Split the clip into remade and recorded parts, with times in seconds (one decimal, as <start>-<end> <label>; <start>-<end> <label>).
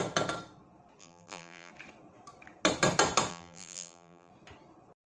0.0-1.0 recorded; 1.0-1.7 remade; 1.7-3.3 recorded; 3.3-4.3 remade; 4.3-5.1 recorded